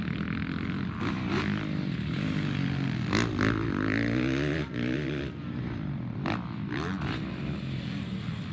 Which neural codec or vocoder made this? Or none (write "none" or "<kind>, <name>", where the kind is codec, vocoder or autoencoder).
none